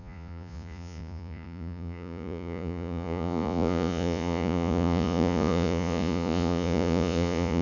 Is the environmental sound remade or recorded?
remade